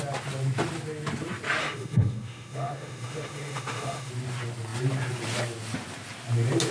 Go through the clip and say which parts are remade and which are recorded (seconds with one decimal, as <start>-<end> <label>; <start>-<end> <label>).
0.0-1.6 recorded; 1.6-4.1 remade; 4.1-6.7 recorded